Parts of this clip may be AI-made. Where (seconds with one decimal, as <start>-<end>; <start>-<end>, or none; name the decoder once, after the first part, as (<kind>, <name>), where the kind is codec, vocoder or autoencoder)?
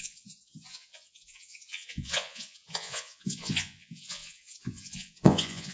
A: 0.0-5.7 (vocoder, Vocos)